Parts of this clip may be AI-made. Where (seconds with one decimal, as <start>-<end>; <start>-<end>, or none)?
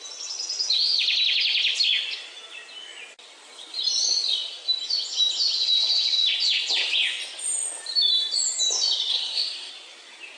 9.1-9.7